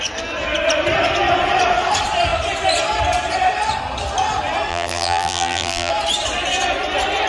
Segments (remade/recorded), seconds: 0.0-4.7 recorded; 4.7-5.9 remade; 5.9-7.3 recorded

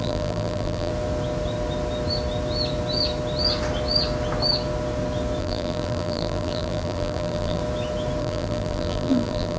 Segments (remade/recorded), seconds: 0.0-0.9 remade; 0.9-5.4 recorded; 5.4-7.6 remade; 7.6-8.2 recorded; 8.2-9.6 remade

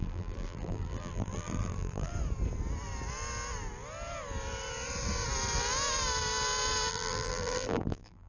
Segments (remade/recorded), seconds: 0.0-2.1 remade; 2.1-6.9 recorded; 6.9-8.3 remade

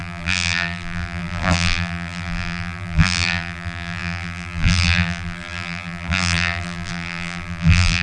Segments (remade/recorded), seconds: 0.0-8.0 remade

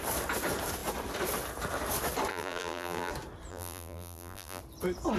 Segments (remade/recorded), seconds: 0.0-2.3 recorded; 2.3-3.1 remade; 3.1-3.5 recorded; 3.5-4.6 remade; 4.6-5.2 recorded